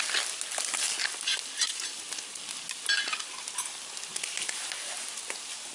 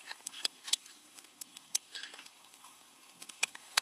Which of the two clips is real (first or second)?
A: first